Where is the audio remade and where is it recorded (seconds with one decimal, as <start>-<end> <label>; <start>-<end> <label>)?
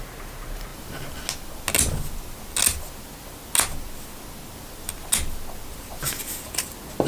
0.0-7.1 recorded